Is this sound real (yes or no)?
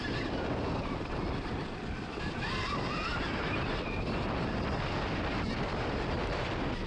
yes